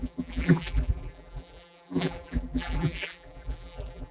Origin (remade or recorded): remade